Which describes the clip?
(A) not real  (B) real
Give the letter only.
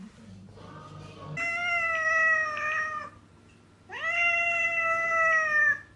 B